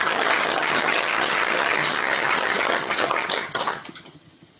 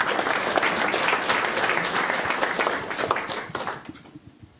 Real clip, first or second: second